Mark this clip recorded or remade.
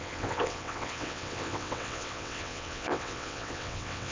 remade